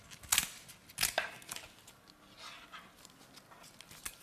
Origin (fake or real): real